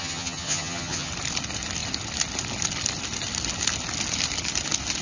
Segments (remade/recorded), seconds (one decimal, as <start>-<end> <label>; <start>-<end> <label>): 0.0-1.1 remade; 1.1-5.0 recorded